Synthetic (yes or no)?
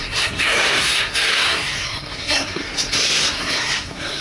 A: yes